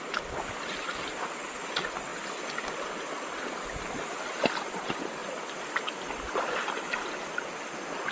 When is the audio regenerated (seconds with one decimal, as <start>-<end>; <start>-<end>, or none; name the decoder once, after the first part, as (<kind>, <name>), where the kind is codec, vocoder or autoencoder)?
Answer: none